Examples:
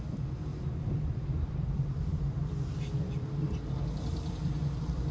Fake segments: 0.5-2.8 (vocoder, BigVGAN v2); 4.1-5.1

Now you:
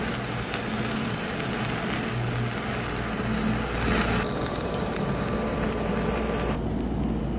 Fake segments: 4.5-5.9 (vocoder, BigVGAN v2)

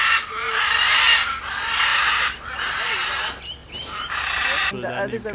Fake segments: 1.9-3.1 (vocoder, BigVGAN v2); 3.6-4.7

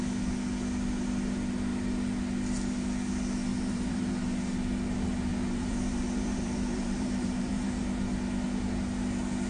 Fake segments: 3.5-4.1 (vocoder, BigVGAN v2); 5.3-7.8

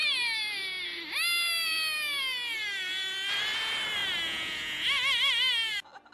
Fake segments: none

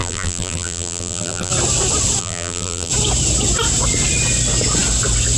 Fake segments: 0.0-1.5 (vocoder, BigVGAN v2); 2.2-2.9

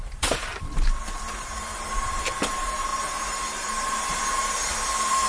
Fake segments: 0.0-5.3 (vocoder, BigVGAN v2)